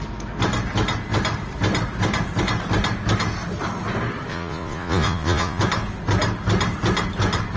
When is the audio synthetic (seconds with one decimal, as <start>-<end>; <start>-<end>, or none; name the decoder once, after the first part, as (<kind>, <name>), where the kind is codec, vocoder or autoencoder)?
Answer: 4.3-5.6 (vocoder, Vocos)